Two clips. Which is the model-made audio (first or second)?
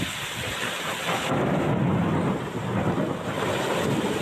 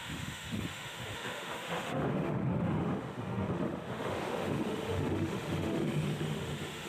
second